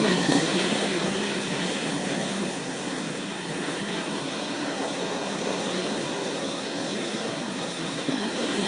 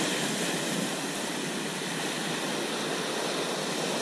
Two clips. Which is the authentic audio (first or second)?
second